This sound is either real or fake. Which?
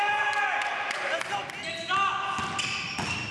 real